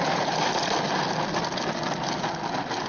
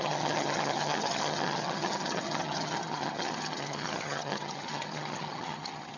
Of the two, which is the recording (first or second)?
first